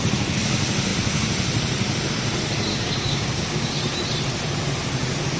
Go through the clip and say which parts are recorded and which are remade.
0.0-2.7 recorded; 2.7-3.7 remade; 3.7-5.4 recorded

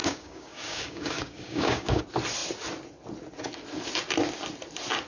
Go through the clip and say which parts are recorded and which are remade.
0.0-2.0 remade; 2.0-5.1 recorded

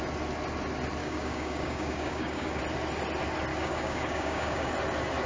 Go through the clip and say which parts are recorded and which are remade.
0.0-1.0 recorded; 1.0-2.6 remade; 2.6-3.5 recorded; 3.5-4.7 remade; 4.7-5.3 recorded

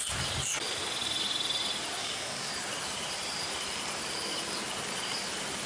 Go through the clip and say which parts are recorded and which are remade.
0.0-2.0 recorded; 2.0-2.5 remade; 2.5-5.7 recorded

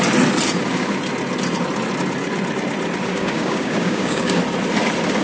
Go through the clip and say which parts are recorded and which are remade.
0.0-3.1 recorded; 3.1-4.4 remade; 4.4-5.2 recorded

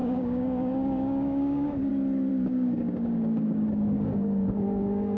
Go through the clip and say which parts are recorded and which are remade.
0.0-1.9 remade; 1.9-2.3 recorded; 2.3-5.2 remade

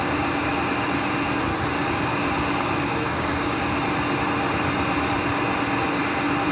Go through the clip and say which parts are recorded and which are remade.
0.0-2.1 recorded; 2.1-3.6 remade; 3.6-6.5 recorded